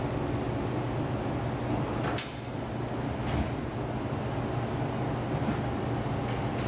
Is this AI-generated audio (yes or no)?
no